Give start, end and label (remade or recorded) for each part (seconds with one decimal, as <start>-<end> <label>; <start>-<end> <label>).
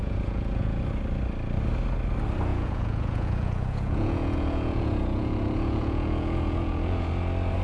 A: 0.0-0.8 remade; 0.8-2.5 recorded; 2.5-7.1 remade; 7.1-7.6 recorded